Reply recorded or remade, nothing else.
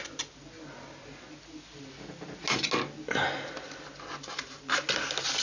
recorded